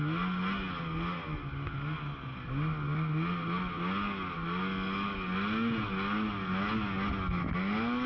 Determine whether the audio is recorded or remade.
recorded